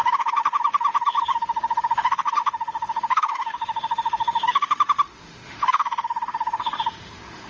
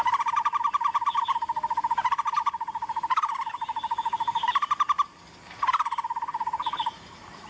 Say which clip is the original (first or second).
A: second